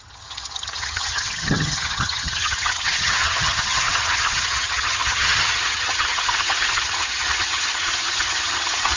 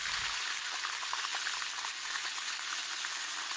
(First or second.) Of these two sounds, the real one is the second